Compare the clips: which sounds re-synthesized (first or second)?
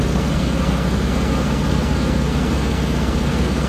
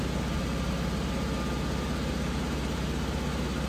first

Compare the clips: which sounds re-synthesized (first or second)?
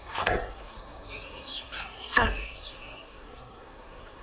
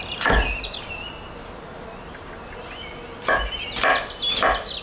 first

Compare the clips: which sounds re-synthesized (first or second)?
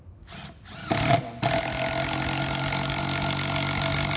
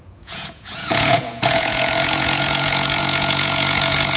second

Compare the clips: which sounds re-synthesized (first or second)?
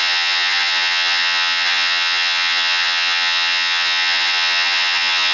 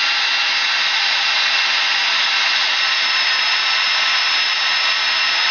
first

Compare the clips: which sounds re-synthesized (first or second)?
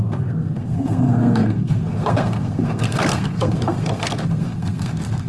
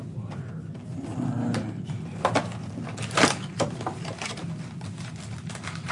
first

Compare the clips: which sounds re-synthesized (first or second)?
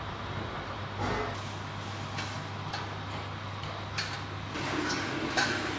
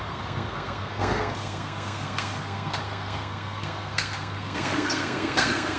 second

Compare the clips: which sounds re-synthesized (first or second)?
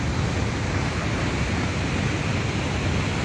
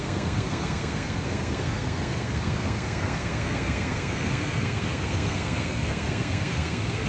second